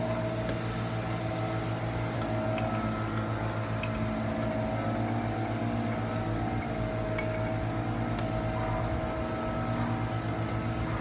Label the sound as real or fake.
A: real